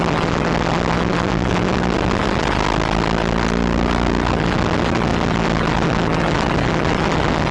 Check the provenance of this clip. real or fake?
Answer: real